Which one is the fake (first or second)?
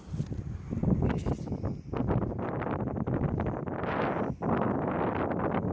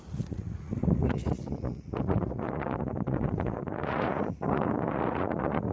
second